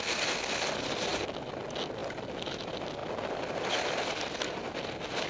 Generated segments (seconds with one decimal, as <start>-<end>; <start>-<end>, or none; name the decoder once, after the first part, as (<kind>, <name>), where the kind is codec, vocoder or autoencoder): none